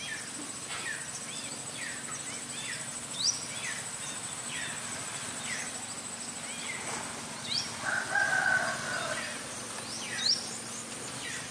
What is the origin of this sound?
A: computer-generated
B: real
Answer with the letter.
B